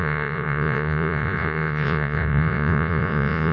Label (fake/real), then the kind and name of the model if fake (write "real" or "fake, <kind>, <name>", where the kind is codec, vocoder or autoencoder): fake, vocoder, Vocos